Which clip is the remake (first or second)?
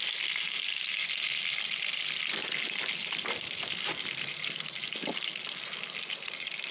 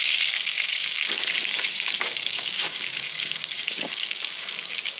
second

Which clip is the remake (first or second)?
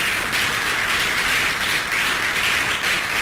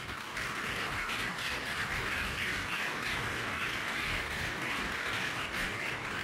second